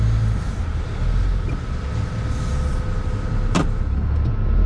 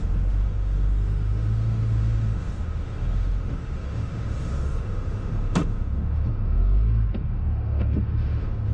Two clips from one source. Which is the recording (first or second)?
first